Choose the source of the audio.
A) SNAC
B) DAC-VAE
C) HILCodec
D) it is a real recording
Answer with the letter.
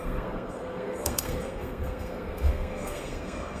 A